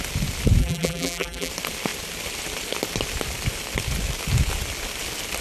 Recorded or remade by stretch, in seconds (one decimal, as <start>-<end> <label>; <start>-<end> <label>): 0.0-0.6 recorded; 0.6-1.5 remade; 1.5-5.4 recorded